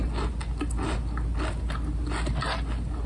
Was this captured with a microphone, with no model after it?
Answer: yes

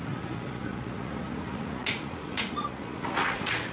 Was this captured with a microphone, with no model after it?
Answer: no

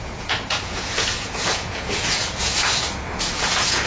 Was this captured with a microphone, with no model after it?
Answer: no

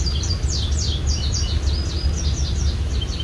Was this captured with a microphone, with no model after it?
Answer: yes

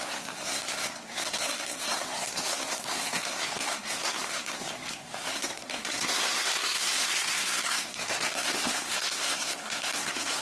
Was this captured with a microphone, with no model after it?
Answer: no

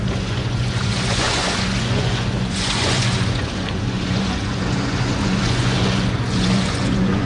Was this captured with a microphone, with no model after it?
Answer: no